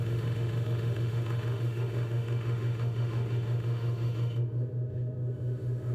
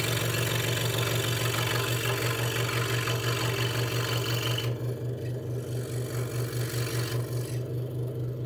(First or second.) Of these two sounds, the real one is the second